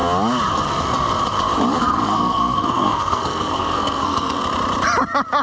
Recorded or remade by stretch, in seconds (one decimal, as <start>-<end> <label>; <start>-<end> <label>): 0.0-1.8 recorded; 1.8-4.4 remade; 4.4-5.4 recorded